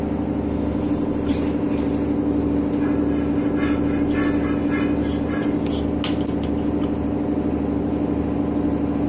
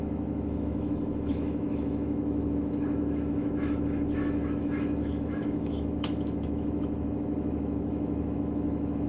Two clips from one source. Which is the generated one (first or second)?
second